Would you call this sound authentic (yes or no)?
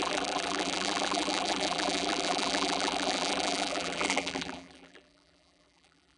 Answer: no